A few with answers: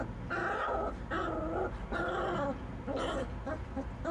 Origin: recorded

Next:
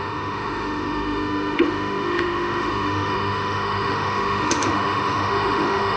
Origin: remade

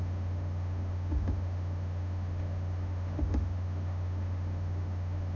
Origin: remade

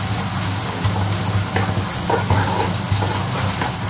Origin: recorded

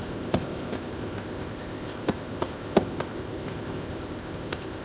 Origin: remade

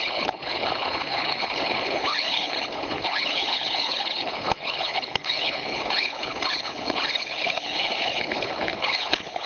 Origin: remade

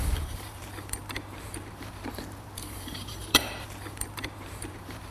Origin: remade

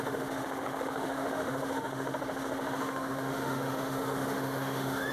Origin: remade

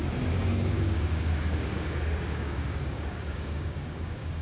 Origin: remade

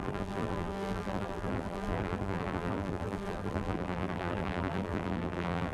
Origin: remade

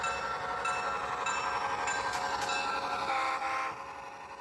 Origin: recorded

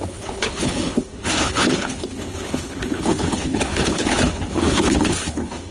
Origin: remade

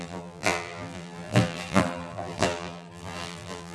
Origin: remade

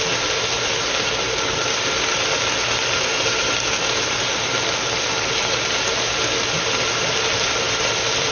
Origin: recorded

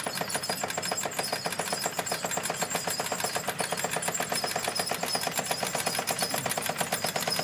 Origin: recorded